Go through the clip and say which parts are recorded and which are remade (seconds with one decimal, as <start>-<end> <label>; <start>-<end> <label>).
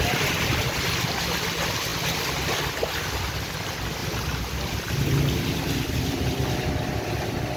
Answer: 0.0-7.6 recorded